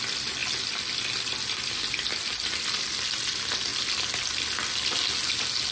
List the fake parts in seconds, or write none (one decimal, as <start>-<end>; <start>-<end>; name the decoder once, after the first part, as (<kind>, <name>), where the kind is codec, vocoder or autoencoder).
none